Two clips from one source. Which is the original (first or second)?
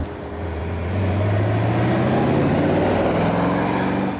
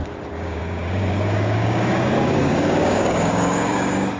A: first